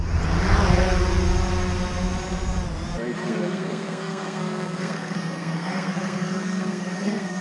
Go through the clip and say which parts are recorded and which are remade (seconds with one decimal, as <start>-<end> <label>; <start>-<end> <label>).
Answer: 0.0-3.2 recorded; 3.2-7.4 remade